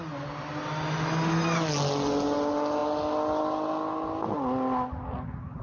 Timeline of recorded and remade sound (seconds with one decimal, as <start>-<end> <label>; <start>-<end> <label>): 0.0-5.6 recorded